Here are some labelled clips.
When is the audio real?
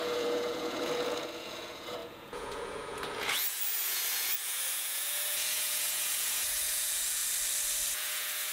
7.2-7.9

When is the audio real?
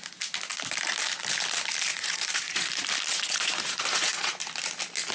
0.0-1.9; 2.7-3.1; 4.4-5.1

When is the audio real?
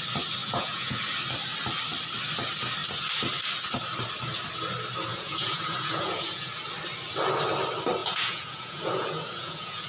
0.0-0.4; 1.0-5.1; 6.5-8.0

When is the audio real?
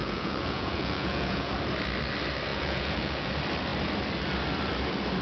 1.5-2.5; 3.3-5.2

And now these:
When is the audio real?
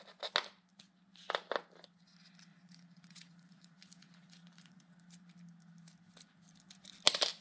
0.0-2.5; 5.0-7.4